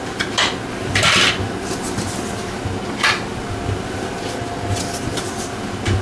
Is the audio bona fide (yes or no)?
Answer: yes